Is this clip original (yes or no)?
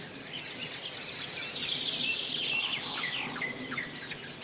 yes